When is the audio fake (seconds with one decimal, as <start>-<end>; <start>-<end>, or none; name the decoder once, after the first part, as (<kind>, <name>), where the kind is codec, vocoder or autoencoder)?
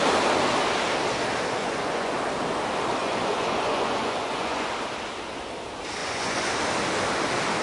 1.6-2.1 (vocoder, Vocos); 3.0-4.7; 6.0-6.5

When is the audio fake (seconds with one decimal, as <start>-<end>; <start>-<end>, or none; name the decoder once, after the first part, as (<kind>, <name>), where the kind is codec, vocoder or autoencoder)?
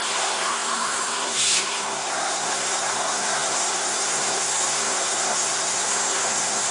0.0-6.7 (codec, SNAC)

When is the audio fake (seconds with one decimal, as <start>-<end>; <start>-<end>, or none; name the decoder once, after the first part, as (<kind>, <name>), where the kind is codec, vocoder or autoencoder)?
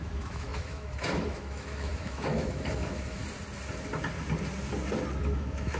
0.0-3.2 (autoencoder, DAC-VAE); 5.2-5.8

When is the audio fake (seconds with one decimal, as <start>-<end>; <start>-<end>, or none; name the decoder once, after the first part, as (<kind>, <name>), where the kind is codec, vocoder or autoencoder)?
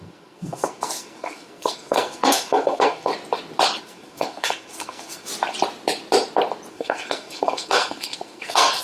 0.0-3.1 (codec, SNAC); 3.8-5.3; 6.7-8.8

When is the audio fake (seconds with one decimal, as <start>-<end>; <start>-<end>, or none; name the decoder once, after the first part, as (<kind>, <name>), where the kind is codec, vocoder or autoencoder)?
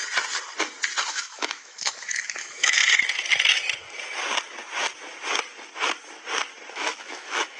1.1-2.8 (autoencoder, DAC-VAE); 6.7-7.6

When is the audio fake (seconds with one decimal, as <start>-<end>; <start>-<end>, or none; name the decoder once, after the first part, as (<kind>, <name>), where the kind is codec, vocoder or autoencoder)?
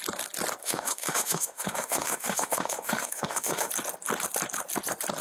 0.6-3.7 (autoencoder, DAC-VAE)